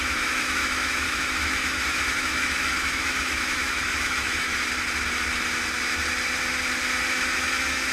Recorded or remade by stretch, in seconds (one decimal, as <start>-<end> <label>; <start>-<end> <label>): 0.0-4.5 remade; 4.5-7.1 recorded; 7.1-7.9 remade

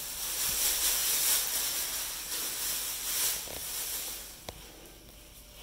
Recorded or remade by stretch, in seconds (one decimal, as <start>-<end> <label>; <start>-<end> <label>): 0.0-5.6 recorded

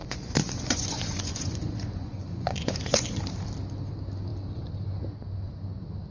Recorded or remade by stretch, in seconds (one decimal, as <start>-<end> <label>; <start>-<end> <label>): 0.0-3.2 remade; 3.2-6.1 recorded

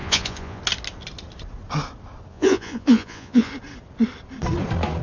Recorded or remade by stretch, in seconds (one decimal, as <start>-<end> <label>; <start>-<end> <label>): 0.0-0.6 remade; 0.6-2.3 recorded; 2.3-3.5 remade; 3.5-5.0 recorded

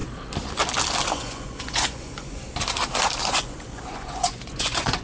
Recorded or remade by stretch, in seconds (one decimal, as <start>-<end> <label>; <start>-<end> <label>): 0.0-1.1 recorded; 1.1-2.4 remade; 2.4-3.2 recorded; 3.2-5.0 remade

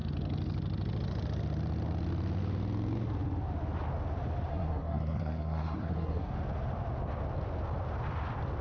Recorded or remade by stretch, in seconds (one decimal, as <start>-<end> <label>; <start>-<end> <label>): 0.0-4.5 recorded; 4.5-6.3 remade; 6.3-8.6 recorded

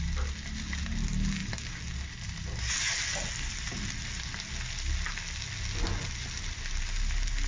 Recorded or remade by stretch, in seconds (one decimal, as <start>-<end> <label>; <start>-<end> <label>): 0.0-7.5 recorded